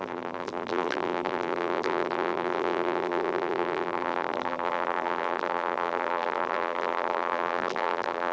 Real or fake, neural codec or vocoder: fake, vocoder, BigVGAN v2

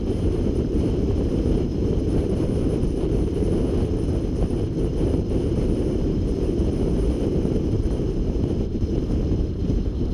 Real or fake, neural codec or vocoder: fake, vocoder, BigVGAN v2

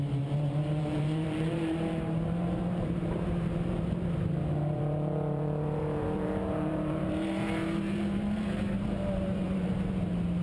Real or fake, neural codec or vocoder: fake, vocoder, BigVGAN v2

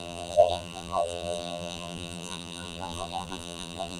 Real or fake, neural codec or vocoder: fake, vocoder, BigVGAN v2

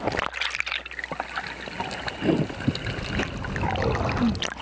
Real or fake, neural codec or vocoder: real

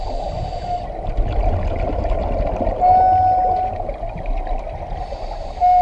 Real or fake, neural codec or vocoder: real